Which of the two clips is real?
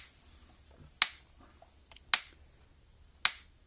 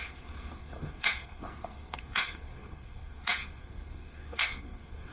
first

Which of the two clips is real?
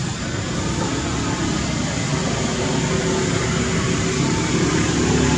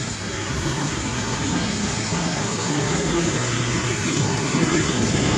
first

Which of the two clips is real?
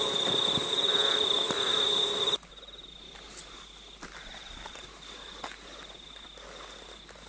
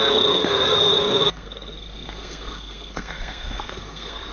first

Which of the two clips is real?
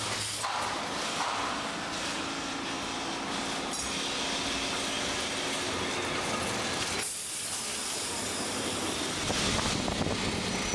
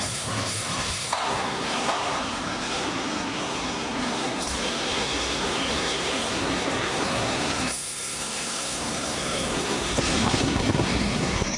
first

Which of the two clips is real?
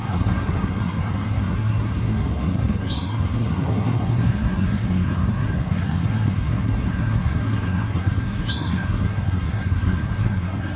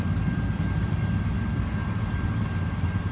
second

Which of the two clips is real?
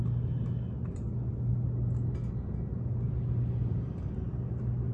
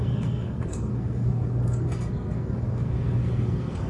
first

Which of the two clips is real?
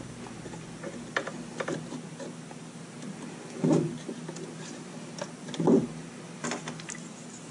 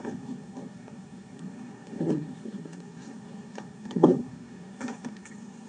first